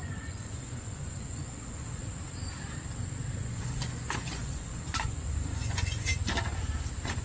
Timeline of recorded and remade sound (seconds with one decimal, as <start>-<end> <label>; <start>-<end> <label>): 0.0-2.0 remade; 2.0-3.4 recorded; 3.4-6.1 remade; 6.1-7.2 recorded

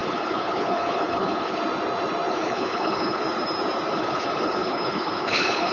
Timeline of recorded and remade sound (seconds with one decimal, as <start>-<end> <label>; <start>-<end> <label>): 0.0-1.6 remade; 1.6-2.3 recorded; 2.3-3.2 remade; 3.2-3.9 recorded; 3.9-5.7 remade

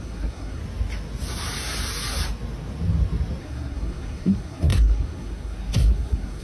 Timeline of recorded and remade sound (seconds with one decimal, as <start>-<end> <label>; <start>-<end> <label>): 0.0-0.6 remade; 0.6-3.4 recorded; 3.4-6.4 remade

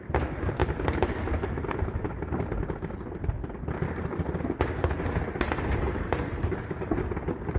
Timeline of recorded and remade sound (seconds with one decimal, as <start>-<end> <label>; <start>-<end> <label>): 0.0-7.6 recorded